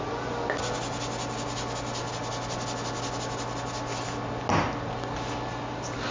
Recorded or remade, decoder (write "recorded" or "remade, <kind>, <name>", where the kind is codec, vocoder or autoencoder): recorded